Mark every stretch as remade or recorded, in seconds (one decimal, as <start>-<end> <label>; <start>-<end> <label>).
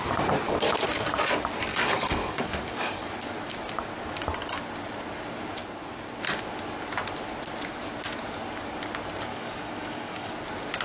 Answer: 0.0-1.7 recorded; 1.7-3.1 remade; 3.1-9.3 recorded; 9.3-10.3 remade; 10.3-10.8 recorded